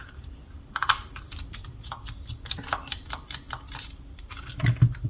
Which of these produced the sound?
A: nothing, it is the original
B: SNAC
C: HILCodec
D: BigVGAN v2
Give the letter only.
D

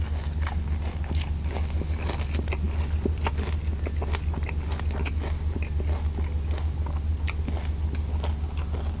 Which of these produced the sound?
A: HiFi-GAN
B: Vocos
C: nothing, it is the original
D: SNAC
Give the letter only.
C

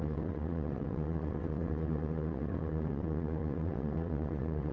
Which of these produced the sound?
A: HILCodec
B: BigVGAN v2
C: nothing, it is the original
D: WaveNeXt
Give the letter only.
D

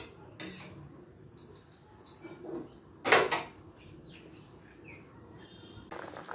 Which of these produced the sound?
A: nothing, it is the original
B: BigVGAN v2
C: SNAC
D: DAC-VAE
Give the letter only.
A